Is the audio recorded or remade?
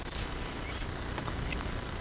recorded